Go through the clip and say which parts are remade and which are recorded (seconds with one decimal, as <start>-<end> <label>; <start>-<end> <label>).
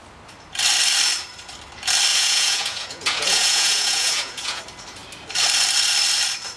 0.0-2.1 recorded; 2.1-4.6 remade; 4.6-6.6 recorded